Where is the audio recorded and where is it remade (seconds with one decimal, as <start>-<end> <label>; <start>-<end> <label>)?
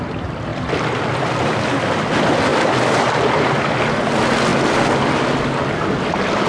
0.0-0.5 recorded; 0.5-2.0 remade; 2.0-2.5 recorded; 2.5-3.8 remade; 3.8-4.5 recorded; 4.5-5.6 remade; 5.6-6.5 recorded